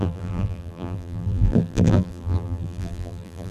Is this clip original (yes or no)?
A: no